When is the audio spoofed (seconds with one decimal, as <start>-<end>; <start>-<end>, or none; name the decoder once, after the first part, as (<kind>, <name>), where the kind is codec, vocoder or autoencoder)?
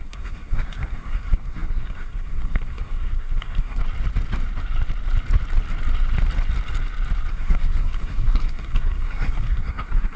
0.0-3.8 (codec, SNAC); 7.3-10.2